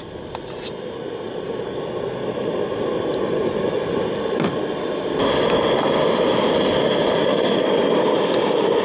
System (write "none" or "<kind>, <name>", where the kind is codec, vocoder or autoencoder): none